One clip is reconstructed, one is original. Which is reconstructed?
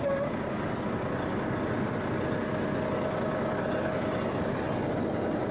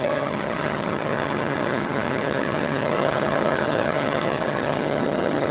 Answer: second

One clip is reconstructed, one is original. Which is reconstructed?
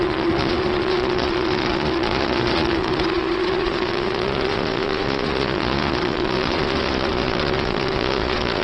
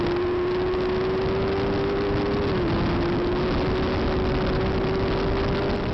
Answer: first